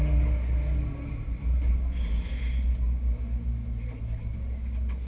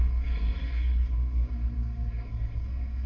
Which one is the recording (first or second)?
first